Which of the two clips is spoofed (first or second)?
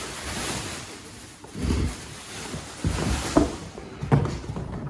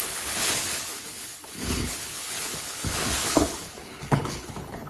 second